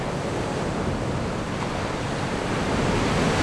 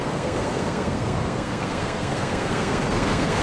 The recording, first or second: first